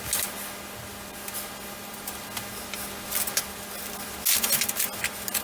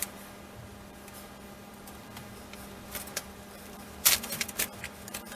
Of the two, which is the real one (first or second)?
first